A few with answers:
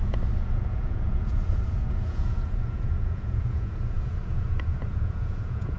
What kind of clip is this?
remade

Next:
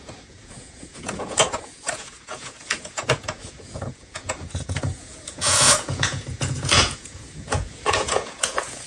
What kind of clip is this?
remade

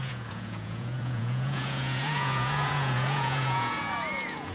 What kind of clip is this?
remade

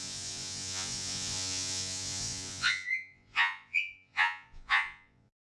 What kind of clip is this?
remade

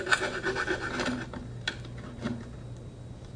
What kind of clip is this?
recorded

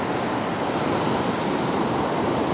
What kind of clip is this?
recorded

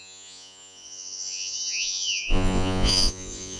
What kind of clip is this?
remade